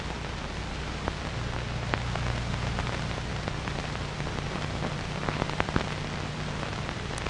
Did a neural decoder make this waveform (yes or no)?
no